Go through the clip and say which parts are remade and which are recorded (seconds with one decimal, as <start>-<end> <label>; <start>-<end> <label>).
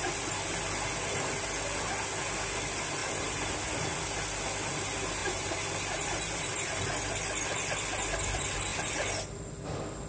0.0-3.0 recorded; 3.0-3.5 remade; 3.5-5.2 recorded; 5.2-6.5 remade; 6.5-10.1 recorded